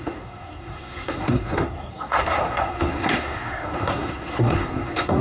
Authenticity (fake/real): fake